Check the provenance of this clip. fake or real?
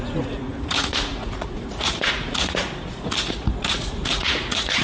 fake